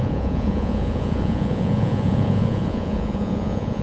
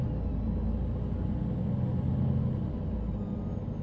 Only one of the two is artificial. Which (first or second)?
first